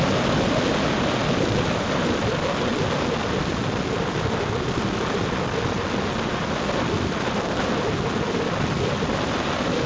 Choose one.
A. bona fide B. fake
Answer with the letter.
A